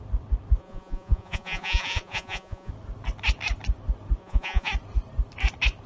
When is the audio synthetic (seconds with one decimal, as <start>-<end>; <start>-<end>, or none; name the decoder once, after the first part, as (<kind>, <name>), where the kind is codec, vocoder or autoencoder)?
0.6-2.7 (vocoder, Vocos); 4.2-4.7